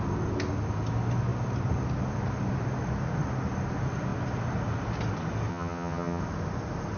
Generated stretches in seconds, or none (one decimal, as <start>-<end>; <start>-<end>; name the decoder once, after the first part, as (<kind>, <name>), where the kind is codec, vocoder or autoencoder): 5.5-6.2 (vocoder, HiFi-GAN)

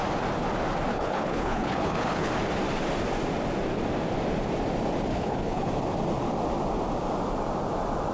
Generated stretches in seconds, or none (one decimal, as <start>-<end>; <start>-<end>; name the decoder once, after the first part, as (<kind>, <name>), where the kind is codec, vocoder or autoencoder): 0.9-2.3 (codec, HILCodec); 5.1-5.7

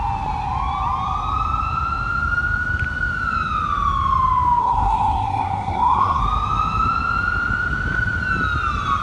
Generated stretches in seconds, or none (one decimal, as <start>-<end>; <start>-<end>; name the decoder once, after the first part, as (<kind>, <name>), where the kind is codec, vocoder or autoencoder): 4.6-6.2 (codec, SNAC)

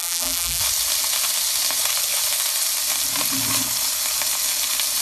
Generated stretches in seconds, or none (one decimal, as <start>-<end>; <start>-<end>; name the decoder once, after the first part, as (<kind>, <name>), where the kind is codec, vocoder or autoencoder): 0.0-0.6 (vocoder, BigVGAN v2)

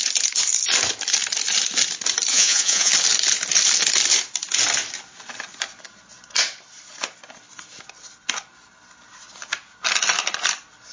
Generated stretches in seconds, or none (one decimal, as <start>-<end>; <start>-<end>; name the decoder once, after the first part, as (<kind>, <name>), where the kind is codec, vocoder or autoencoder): 2.3-2.9 (vocoder, Vocos)

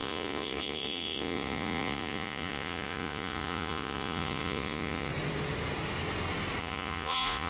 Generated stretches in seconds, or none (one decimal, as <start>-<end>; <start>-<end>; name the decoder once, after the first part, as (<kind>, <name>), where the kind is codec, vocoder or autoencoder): 0.0-5.1 (vocoder, Vocos); 6.6-7.5

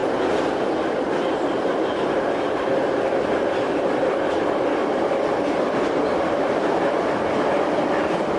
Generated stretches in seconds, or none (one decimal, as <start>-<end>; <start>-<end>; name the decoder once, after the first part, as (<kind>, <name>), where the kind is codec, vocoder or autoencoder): 1.2-8.4 (vocoder, BigVGAN v2)

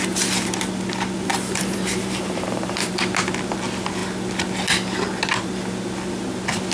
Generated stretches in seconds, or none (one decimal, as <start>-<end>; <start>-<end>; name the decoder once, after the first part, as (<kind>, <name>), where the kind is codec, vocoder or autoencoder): 1.3-2.9 (vocoder, BigVGAN v2)